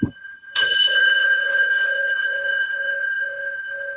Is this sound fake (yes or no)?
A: yes